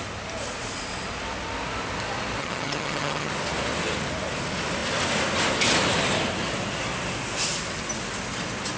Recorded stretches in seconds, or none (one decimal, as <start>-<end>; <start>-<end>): 0.0-2.4; 3.3-8.8